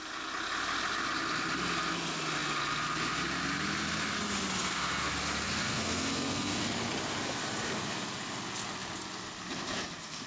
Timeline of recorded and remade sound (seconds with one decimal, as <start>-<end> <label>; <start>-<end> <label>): 0.0-4.6 recorded; 4.6-5.1 remade; 5.1-5.6 recorded; 5.6-6.6 remade; 6.6-10.3 recorded